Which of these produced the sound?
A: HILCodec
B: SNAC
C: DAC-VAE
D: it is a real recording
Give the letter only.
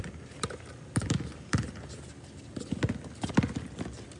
D